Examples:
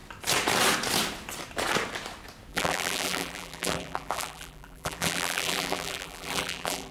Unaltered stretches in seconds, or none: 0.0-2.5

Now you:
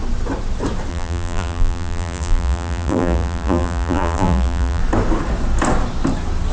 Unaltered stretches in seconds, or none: 0.0-0.9; 4.8-6.5

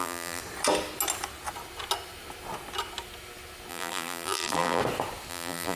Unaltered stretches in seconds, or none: 0.4-3.7; 4.8-5.3

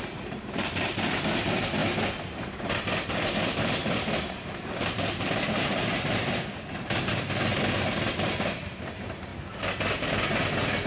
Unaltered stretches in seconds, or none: 1.8-2.3; 3.8-4.5; 7.5-8.2; 9.3-10.9

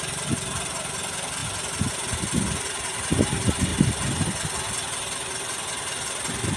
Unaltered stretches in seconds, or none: 0.0-6.6

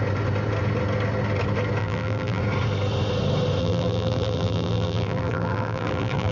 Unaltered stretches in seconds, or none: 0.0-1.8; 2.4-3.6